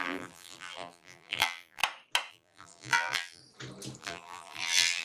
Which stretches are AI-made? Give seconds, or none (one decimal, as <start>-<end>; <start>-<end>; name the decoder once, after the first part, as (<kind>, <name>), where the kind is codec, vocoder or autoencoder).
0.0-1.8 (vocoder, BigVGAN v2); 2.3-3.4; 4.0-5.0

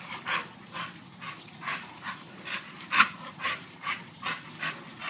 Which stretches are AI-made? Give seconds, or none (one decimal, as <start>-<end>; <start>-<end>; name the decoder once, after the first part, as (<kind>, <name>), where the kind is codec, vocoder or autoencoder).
1.7-4.1 (vocoder, BigVGAN v2)

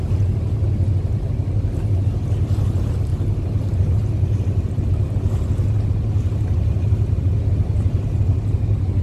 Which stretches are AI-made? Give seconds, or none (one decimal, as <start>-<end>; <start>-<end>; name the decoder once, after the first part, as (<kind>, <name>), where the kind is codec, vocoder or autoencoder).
none

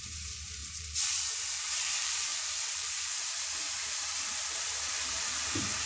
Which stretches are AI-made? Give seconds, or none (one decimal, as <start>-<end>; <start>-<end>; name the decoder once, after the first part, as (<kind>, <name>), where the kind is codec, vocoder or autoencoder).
0.0-5.9 (vocoder, BigVGAN v2)

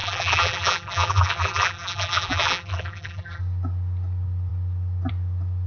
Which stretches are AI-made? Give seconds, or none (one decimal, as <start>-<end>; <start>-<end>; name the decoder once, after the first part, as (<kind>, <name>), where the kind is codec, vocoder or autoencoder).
0.0-3.4 (vocoder, BigVGAN v2)

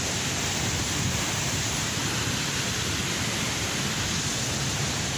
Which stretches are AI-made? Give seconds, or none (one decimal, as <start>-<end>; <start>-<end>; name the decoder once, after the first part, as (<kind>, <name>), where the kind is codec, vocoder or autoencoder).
0.0-2.0 (vocoder, BigVGAN v2); 4.6-5.2